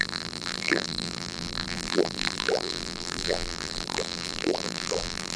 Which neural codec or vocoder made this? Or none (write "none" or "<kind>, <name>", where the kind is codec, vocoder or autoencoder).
vocoder, BigVGAN v2